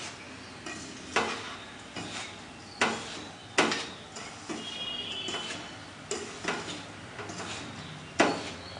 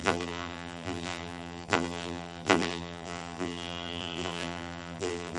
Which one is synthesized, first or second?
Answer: second